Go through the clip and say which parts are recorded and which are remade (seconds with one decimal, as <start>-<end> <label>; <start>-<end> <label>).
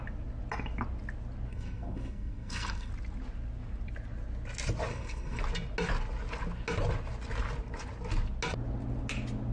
0.0-1.5 recorded; 1.5-2.9 remade; 2.9-4.9 recorded; 4.9-5.4 remade; 5.4-9.5 recorded